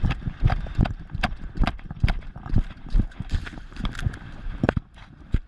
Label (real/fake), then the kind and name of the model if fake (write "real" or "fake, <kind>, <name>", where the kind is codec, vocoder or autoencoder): fake, vocoder, BigVGAN v2